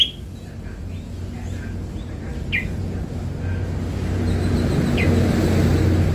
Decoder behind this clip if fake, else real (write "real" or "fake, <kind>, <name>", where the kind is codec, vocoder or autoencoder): real